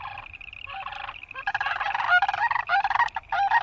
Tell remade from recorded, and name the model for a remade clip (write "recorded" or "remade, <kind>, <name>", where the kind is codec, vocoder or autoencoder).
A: recorded